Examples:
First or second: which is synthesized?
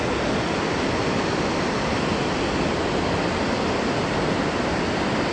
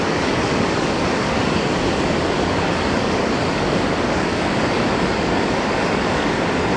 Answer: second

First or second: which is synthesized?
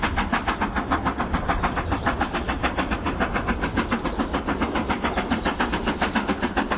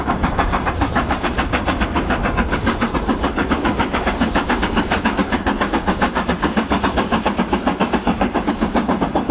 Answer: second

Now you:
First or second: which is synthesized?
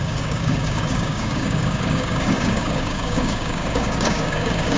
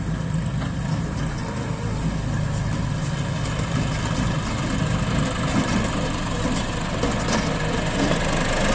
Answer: first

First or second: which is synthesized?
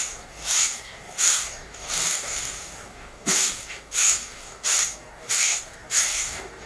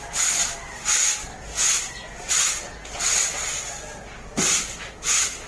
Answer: first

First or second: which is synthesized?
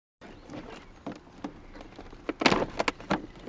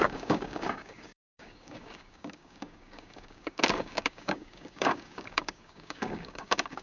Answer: second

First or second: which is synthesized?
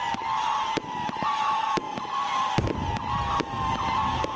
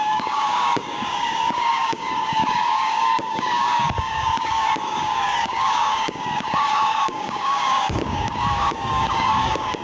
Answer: second